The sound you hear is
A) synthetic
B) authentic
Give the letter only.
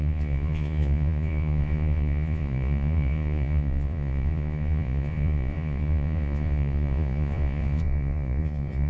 A